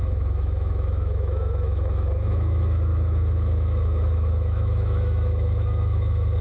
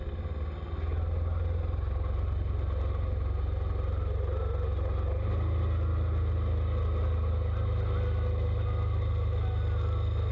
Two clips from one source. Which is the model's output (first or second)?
first